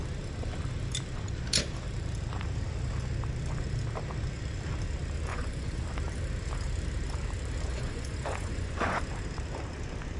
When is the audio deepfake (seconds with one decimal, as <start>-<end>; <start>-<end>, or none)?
5.3-5.8; 7.7-9.0